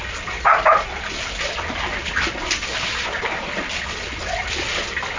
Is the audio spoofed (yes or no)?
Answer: no